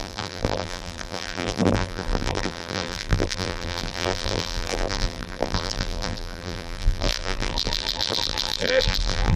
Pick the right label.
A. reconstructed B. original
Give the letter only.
A